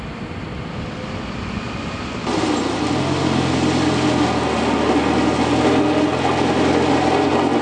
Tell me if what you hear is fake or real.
real